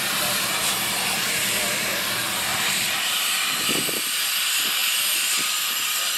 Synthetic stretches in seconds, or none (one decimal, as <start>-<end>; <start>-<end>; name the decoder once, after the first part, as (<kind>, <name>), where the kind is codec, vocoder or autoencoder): 0.0-0.6 (vocoder, BigVGAN v2); 1.2-4.8; 5.3-6.2